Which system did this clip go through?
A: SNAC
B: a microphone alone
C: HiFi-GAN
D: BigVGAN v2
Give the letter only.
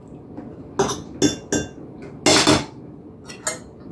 B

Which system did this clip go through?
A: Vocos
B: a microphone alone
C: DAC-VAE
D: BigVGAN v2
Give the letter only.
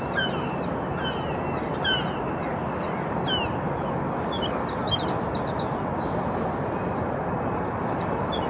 B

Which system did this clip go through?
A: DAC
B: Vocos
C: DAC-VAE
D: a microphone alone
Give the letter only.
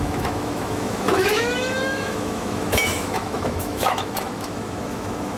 C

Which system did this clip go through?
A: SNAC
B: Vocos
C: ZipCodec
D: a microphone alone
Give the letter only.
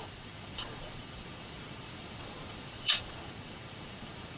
B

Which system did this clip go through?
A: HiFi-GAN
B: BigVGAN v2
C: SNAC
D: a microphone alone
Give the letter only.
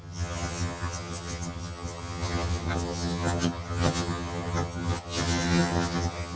A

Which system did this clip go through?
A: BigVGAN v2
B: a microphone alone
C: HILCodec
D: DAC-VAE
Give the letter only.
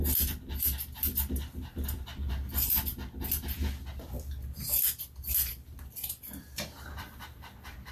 B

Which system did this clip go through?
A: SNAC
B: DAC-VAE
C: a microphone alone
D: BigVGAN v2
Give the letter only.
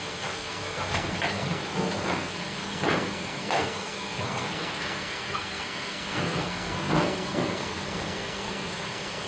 A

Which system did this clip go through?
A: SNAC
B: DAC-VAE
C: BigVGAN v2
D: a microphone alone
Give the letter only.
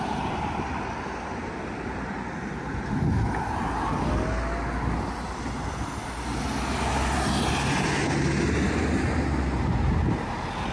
D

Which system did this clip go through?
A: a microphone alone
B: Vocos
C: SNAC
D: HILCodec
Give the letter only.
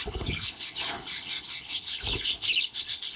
D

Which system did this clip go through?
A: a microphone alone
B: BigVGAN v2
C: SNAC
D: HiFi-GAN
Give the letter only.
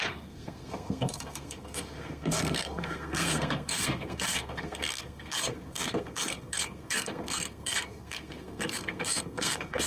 C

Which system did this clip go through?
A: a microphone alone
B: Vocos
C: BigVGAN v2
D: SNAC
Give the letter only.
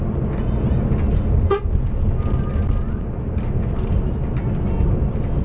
A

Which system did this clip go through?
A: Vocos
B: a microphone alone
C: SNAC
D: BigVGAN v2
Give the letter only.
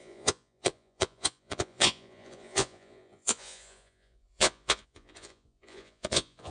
A